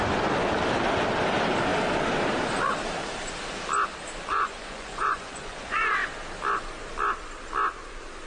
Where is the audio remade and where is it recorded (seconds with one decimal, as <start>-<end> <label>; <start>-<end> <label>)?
0.0-4.3 recorded; 4.3-5.9 remade; 5.9-8.3 recorded